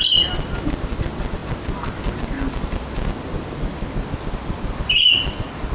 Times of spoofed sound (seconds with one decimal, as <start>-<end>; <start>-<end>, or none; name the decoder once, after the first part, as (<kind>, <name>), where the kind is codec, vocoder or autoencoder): none